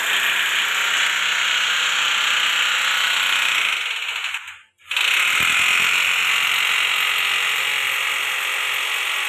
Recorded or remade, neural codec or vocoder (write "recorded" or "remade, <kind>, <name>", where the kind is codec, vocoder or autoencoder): recorded